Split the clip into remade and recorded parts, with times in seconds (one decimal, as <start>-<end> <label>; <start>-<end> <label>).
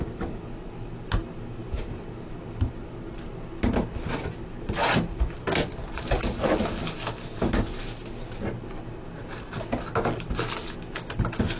0.0-5.7 recorded; 5.7-7.0 remade; 7.0-11.6 recorded